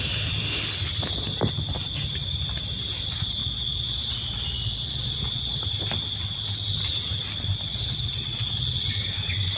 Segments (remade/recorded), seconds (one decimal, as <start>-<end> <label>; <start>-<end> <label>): 0.0-3.4 recorded; 3.4-5.6 remade; 5.6-7.7 recorded; 7.7-8.9 remade; 8.9-9.6 recorded